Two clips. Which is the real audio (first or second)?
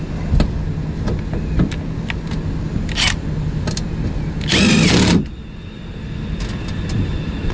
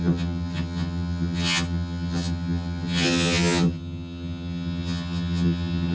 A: first